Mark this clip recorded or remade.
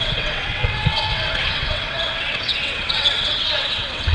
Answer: remade